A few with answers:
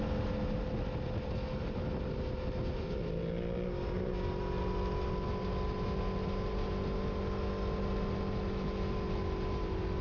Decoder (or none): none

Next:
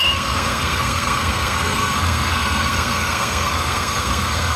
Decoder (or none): codec, SNAC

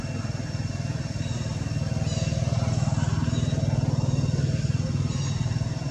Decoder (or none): none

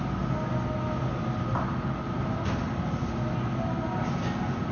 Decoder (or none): none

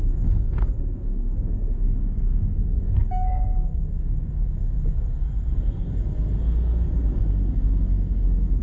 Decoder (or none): codec, SNAC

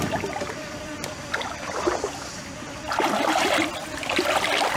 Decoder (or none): none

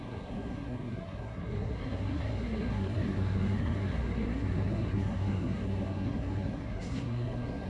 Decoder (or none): codec, SNAC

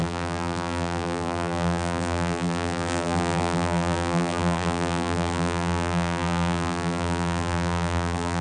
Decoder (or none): vocoder, BigVGAN v2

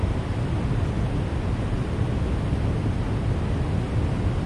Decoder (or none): none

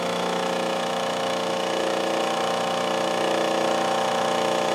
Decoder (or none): autoencoder, DAC-VAE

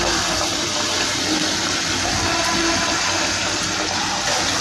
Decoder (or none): none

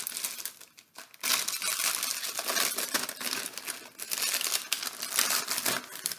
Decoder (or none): none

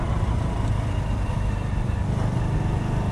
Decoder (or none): none